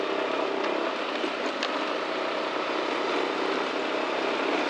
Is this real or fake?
real